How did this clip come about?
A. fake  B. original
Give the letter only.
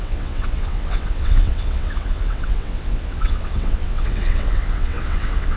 A